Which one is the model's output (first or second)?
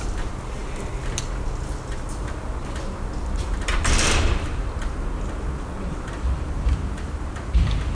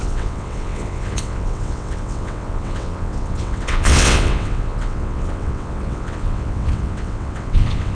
second